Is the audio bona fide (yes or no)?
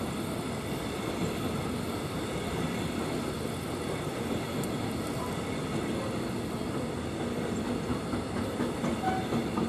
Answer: yes